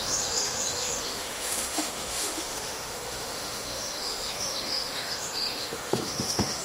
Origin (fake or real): fake